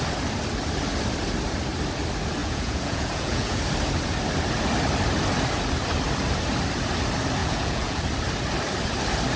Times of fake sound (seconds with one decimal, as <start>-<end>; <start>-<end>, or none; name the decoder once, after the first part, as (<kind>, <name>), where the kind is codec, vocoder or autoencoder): 2.4-3.6 (vocoder, Vocos); 7.4-8.0